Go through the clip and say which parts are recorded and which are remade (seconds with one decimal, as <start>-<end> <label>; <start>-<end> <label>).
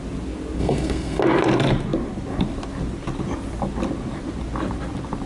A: 0.0-0.6 recorded; 0.6-1.2 remade; 1.2-5.3 recorded